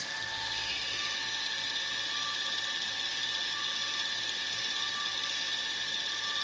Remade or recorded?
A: recorded